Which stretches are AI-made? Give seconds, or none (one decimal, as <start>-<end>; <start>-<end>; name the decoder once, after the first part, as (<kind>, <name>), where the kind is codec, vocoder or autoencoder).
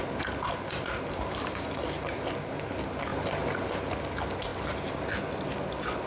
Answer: none